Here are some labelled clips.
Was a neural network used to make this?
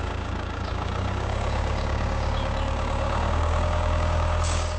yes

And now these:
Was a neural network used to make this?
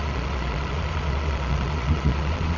yes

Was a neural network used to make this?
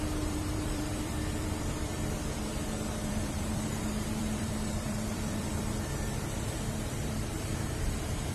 yes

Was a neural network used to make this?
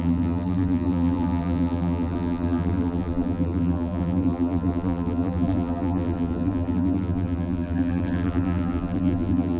yes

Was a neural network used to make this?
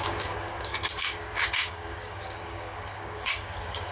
yes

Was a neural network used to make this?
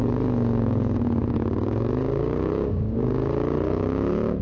yes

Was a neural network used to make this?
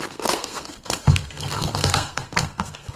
yes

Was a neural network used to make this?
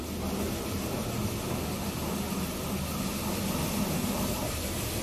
no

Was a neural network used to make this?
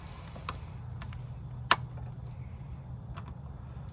no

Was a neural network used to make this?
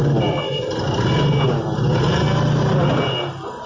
no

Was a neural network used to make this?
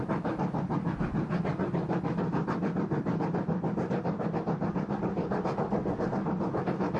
no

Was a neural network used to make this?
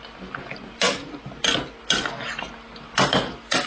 no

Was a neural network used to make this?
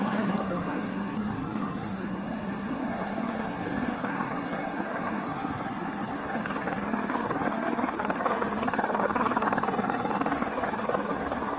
yes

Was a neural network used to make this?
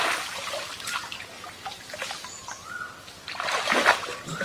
no